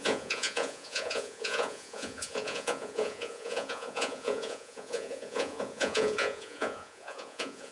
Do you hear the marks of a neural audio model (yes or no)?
yes